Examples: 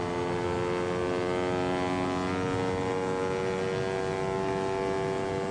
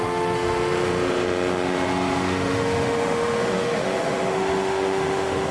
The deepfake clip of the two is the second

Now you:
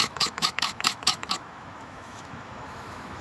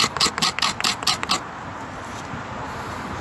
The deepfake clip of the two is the first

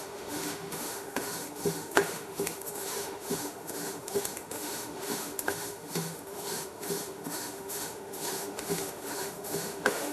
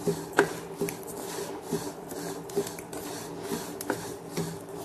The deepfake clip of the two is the first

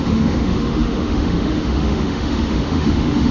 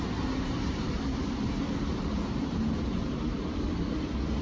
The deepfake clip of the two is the first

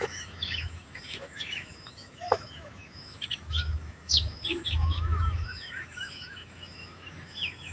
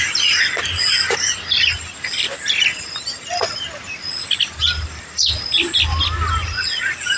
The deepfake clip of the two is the first